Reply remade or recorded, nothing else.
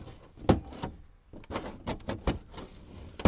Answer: recorded